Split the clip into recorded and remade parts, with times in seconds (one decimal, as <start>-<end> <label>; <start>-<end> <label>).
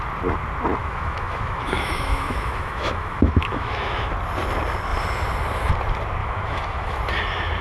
0.0-0.8 recorded; 0.8-4.1 remade; 4.1-6.2 recorded; 6.2-7.0 remade; 7.0-7.6 recorded